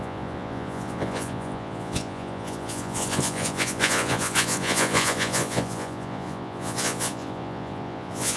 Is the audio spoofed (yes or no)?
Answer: yes